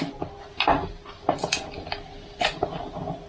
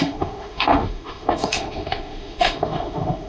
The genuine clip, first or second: first